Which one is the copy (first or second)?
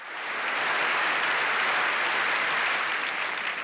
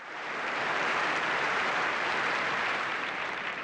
second